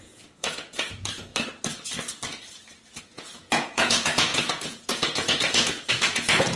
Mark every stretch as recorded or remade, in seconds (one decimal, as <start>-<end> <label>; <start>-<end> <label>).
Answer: 0.0-1.3 remade; 1.3-3.0 recorded; 3.0-6.6 remade